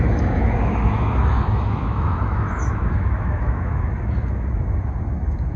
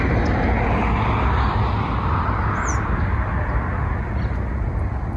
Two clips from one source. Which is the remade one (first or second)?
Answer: first